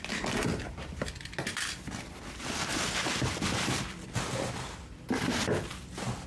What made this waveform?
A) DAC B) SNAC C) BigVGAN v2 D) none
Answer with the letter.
C